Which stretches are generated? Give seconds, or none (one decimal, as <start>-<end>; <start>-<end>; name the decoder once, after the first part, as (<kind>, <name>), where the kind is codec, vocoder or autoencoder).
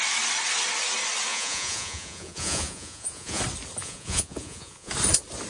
1.3-3.4 (vocoder, Vocos); 3.8-4.9